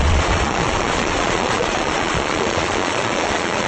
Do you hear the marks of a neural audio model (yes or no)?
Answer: yes